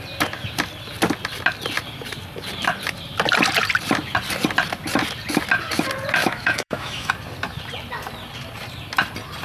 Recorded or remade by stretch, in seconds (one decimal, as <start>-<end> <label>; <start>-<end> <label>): 0.0-6.2 recorded; 6.2-7.1 remade; 7.1-9.4 recorded